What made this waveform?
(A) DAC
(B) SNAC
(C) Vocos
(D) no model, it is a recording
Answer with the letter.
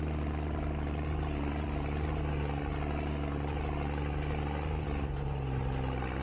D